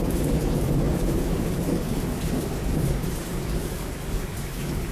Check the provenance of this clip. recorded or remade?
remade